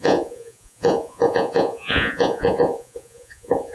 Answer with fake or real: fake